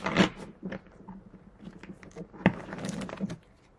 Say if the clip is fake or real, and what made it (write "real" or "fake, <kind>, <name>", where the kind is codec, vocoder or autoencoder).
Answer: real